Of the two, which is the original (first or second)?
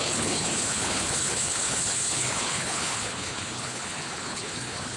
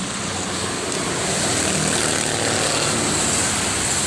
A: second